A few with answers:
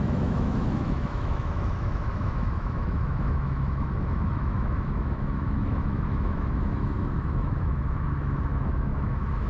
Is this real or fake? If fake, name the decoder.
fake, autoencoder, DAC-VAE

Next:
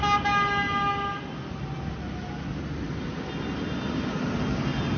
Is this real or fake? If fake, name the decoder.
real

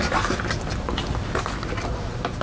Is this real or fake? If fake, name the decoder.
real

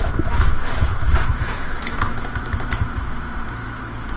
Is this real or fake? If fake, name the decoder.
fake, autoencoder, DAC-VAE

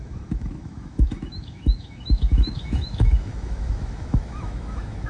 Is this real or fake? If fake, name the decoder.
fake, autoencoder, DAC-VAE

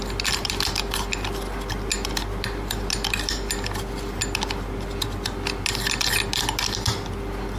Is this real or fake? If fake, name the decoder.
real